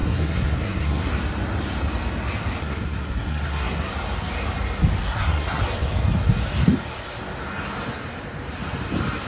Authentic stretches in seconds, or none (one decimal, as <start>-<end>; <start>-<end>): 1.1-2.6; 3.9-5.0; 5.6-9.3